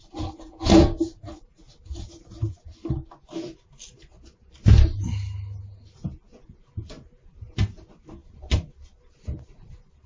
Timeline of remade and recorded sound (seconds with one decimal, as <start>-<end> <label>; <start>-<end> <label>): 0.0-8.2 recorded; 8.2-9.0 remade; 9.0-10.1 recorded